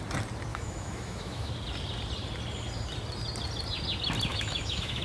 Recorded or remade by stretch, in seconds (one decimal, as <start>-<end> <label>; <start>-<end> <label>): 0.0-0.5 recorded; 0.5-1.5 remade; 1.5-4.3 recorded; 4.3-5.0 remade